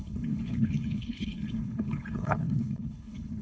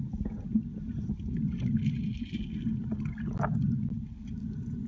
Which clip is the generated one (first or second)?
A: first